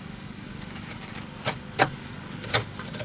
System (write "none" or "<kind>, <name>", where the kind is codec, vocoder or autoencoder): codec, DAC